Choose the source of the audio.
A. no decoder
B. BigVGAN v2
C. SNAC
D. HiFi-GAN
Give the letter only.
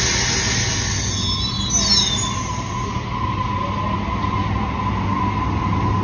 A